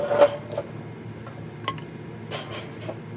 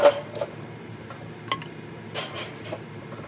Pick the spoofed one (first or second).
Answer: second